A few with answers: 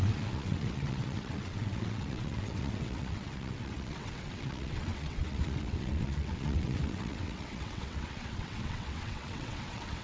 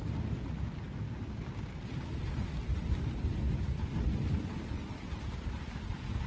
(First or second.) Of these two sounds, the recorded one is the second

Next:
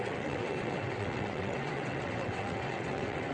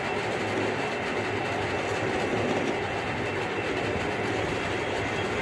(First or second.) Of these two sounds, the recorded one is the second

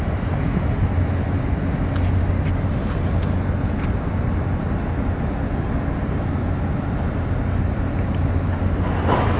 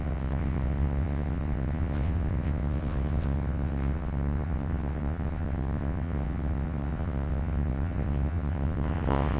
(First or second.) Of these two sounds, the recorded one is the first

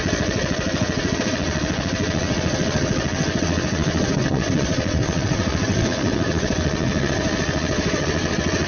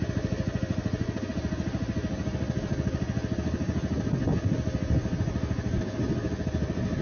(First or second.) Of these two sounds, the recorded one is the second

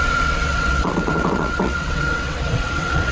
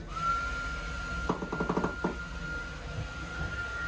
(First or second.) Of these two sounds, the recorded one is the second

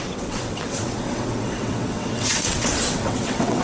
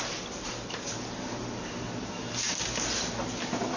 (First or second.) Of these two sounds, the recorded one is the second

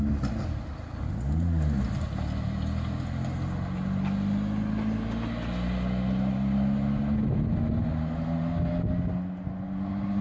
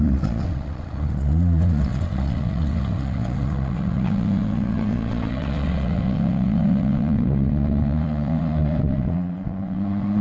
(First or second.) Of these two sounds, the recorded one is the first